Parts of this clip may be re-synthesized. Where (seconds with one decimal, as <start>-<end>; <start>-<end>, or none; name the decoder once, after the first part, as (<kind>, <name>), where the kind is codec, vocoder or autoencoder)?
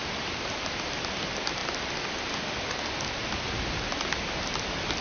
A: none